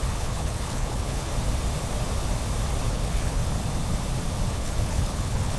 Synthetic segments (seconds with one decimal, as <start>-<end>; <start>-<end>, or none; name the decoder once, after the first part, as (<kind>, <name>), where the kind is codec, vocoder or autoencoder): 0.0-1.3 (codec, HILCodec); 2.9-3.4; 4.5-5.6